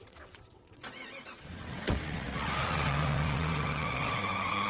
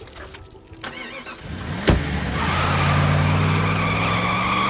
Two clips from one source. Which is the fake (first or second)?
first